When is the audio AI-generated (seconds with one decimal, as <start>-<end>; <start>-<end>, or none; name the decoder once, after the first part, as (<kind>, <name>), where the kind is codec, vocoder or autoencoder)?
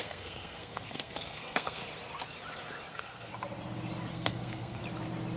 0.0-1.8 (codec, SNAC); 2.9-3.3; 4.1-4.8